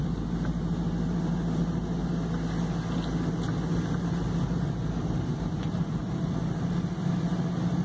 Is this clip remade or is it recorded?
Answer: recorded